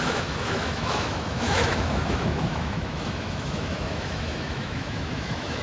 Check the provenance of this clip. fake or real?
fake